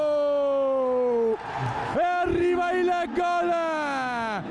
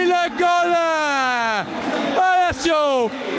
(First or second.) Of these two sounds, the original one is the first